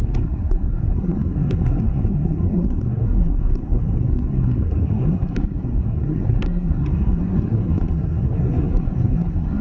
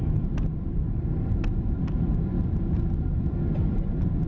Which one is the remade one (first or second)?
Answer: first